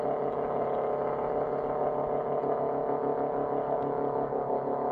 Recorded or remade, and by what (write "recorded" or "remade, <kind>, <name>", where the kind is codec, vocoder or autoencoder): recorded